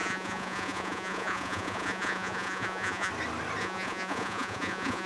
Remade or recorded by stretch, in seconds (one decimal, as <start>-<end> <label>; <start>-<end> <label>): 0.0-3.1 remade; 3.1-3.6 recorded; 3.6-5.1 remade